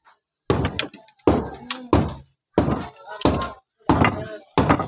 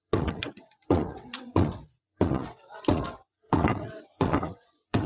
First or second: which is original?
first